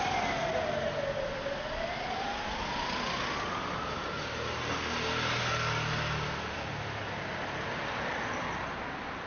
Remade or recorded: recorded